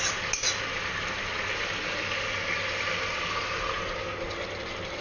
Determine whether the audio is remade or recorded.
recorded